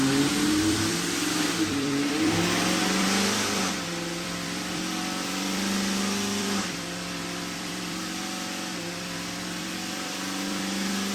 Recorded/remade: remade